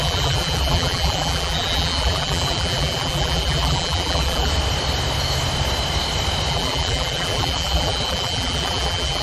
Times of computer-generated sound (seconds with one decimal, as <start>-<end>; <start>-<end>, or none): 0.0-4.5; 6.5-9.2